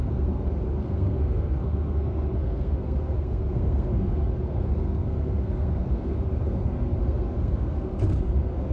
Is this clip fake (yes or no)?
yes